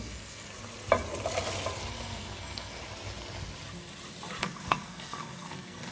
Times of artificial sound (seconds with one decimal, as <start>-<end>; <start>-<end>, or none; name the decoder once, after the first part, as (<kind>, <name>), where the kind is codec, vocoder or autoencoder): 0.0-0.5 (codec, SNAC); 1.9-2.8; 4.4-5.9